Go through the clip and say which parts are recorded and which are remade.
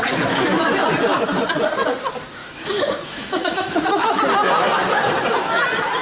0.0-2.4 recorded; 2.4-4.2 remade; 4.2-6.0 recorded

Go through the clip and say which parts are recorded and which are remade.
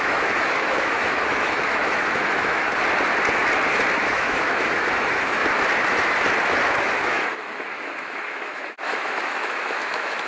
0.0-2.8 remade; 2.8-4.0 recorded; 4.0-5.4 remade; 5.4-6.8 recorded; 6.8-10.3 remade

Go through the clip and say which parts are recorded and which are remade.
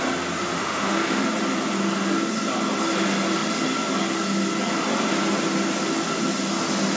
0.0-0.4 recorded; 0.4-1.2 remade; 1.2-7.0 recorded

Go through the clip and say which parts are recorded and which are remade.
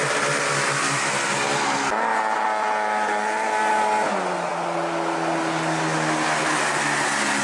0.0-7.4 recorded